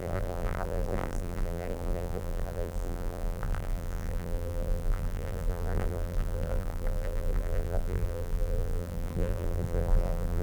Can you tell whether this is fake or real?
fake